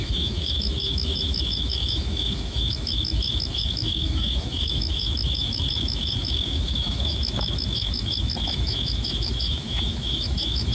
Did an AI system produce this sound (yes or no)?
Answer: yes